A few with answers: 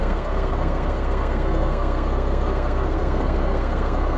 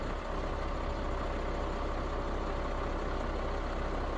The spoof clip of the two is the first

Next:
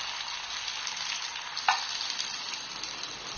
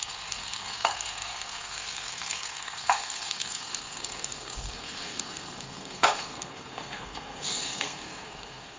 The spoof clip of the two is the second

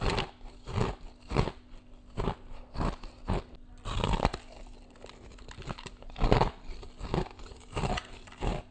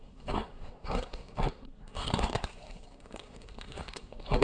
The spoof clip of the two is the second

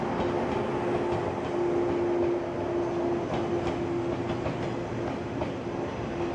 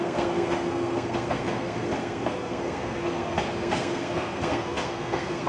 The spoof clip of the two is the second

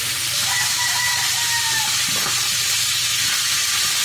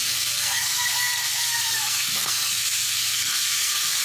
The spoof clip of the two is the second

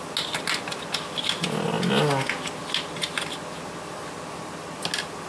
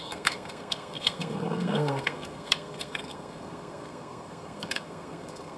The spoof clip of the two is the second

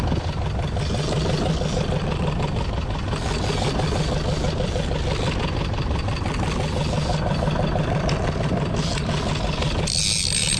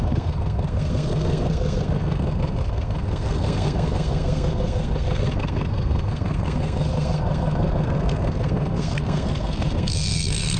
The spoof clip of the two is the second